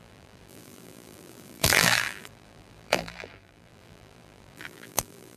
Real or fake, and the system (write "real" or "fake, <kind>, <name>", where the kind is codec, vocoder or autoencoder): fake, vocoder, BigVGAN v2